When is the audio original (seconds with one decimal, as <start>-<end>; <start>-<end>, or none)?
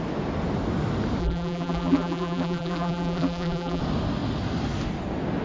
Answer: 0.0-1.2; 3.8-5.4